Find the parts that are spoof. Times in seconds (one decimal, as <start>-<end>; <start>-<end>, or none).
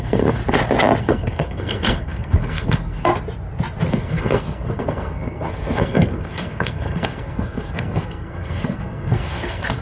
0.0-0.4; 1.0-3.1; 3.9-9.8